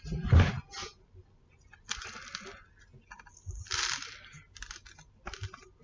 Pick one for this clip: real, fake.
real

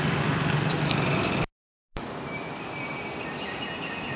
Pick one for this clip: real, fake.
real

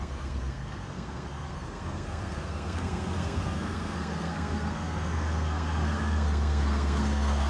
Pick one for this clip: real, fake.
fake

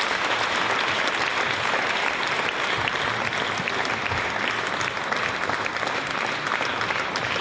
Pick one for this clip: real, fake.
real